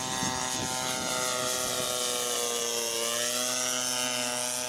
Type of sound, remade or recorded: recorded